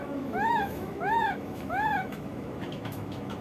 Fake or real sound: fake